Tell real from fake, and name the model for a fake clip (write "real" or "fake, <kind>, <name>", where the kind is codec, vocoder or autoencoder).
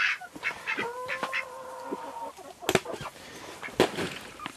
real